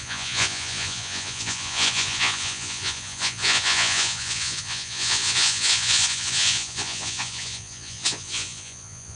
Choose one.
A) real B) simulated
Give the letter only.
B